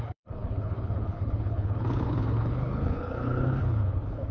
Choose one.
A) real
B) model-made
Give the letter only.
B